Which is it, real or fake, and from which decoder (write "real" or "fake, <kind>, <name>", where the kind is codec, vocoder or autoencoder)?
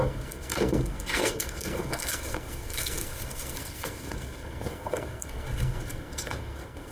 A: fake, codec, SNAC